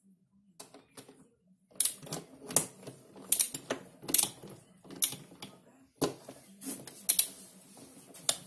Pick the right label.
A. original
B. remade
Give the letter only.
A